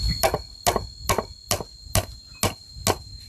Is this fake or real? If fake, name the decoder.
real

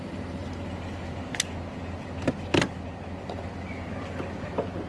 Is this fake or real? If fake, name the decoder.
real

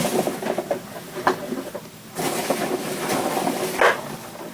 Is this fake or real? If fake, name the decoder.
real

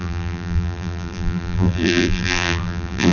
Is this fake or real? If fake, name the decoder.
fake, vocoder, BigVGAN v2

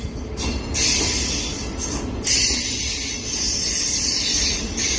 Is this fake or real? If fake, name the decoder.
real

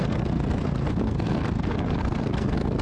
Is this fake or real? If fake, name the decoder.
fake, codec, SNAC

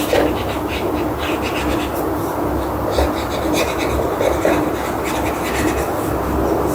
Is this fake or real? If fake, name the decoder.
real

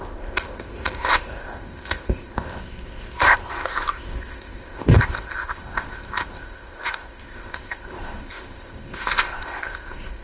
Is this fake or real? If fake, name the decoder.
fake, codec, ZipCodec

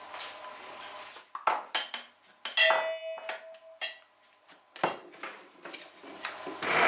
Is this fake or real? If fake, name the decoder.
real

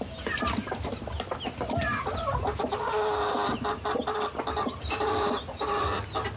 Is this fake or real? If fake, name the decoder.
real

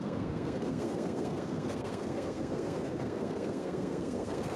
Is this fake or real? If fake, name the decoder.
fake, codec, SNAC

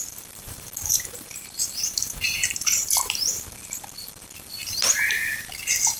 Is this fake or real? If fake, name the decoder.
fake, vocoder, BigVGAN v2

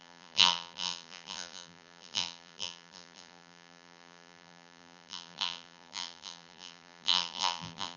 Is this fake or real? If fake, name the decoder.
fake, vocoder, BigVGAN v2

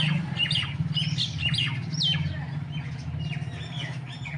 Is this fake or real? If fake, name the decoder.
real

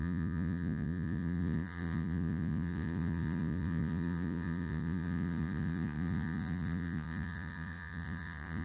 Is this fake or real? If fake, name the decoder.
fake, vocoder, Vocos